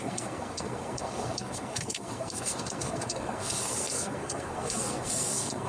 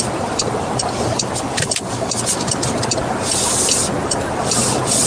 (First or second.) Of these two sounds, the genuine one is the second